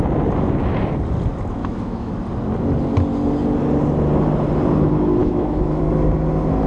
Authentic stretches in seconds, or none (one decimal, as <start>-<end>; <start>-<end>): 0.0-1.6; 2.1-5.2; 5.8-6.7